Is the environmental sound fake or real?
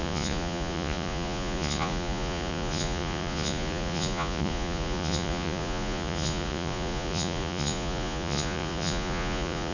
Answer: fake